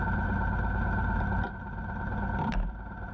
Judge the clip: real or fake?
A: real